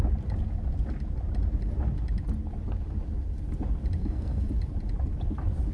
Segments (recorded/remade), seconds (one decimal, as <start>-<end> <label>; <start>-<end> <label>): 0.0-4.0 recorded; 4.0-4.5 remade; 4.5-5.7 recorded